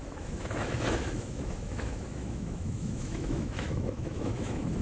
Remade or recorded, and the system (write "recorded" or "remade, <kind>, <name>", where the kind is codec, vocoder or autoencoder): remade, autoencoder, DAC-VAE